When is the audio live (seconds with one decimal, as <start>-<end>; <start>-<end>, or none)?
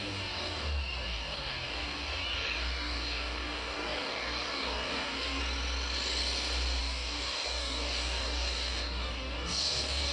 5.4-6.8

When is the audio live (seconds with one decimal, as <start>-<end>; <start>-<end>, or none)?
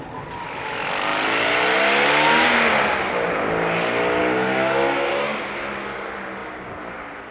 0.0-4.2; 5.4-7.3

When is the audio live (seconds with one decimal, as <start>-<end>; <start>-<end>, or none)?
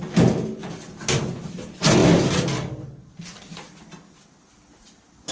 0.0-5.3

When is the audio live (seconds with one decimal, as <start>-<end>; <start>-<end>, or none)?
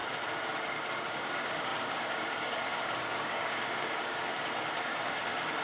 0.0-1.1; 4.3-4.8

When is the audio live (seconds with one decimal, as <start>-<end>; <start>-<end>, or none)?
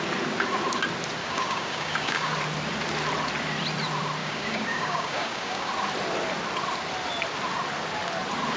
0.0-1.2; 2.3-4.2; 5.7-8.6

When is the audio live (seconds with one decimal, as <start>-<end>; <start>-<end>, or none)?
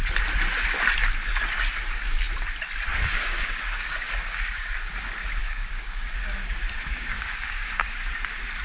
0.0-2.9; 4.8-5.4; 8.1-8.6